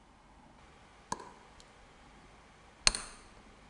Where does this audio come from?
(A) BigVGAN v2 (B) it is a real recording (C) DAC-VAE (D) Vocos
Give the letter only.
B